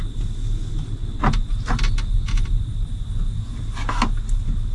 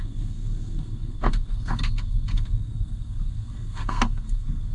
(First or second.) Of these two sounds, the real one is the first